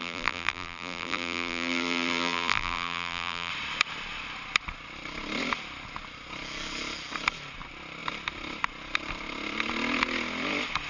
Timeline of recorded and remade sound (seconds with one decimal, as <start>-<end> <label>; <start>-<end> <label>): 0.0-3.5 remade; 3.5-10.9 recorded